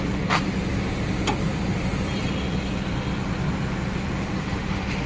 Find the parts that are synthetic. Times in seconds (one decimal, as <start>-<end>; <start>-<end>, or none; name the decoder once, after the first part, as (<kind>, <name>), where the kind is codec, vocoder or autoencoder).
4.4-5.1 (autoencoder, DAC-VAE)